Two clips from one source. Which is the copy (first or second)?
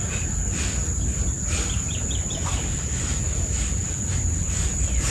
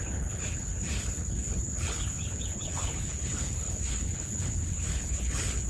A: second